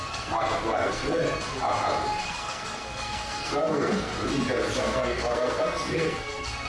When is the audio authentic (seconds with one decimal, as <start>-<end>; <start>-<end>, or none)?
1.2-2.2; 4.1-4.8